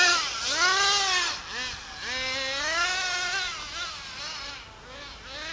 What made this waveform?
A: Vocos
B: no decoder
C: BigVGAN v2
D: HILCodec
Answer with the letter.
B